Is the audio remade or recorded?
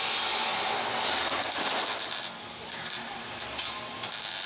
recorded